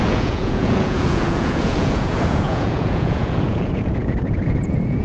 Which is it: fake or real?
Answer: fake